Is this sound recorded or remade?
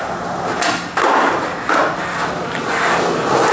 recorded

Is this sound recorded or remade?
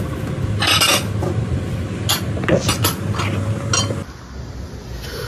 recorded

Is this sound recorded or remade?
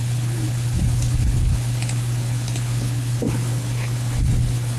remade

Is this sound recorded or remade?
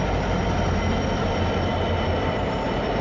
recorded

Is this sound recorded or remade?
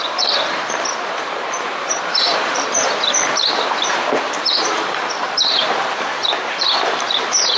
remade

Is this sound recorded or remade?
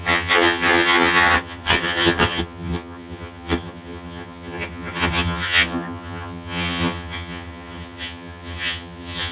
remade